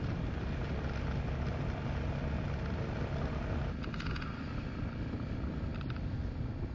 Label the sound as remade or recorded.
recorded